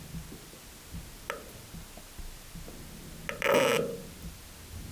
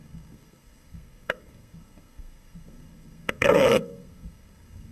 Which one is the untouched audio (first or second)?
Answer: first